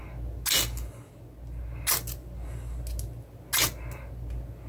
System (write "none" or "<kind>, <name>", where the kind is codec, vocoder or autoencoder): none